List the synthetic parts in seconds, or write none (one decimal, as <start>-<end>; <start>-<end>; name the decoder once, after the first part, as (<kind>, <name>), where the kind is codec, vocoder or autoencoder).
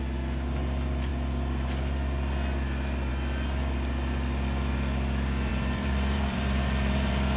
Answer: 5.5-7.4 (vocoder, BigVGAN v2)